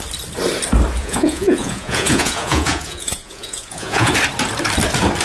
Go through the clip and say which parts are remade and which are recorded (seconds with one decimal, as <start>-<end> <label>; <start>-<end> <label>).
0.0-1.0 recorded; 1.0-4.1 remade; 4.1-5.2 recorded